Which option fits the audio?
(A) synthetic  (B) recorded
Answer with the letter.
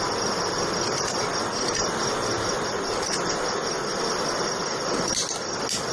B